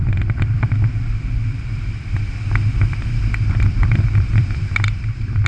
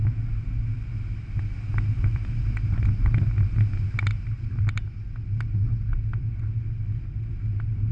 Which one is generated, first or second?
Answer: first